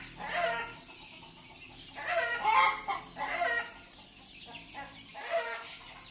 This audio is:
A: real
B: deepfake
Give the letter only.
A